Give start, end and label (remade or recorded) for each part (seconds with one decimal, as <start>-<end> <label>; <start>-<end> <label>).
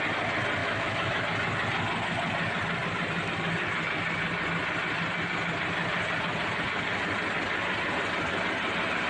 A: 0.0-0.6 recorded; 0.6-1.2 remade; 1.2-9.1 recorded